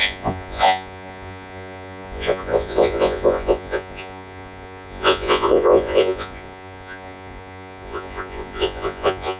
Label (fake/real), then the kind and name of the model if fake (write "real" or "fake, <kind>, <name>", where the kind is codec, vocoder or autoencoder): fake, vocoder, Vocos